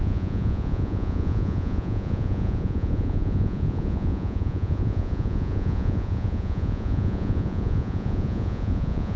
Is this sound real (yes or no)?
no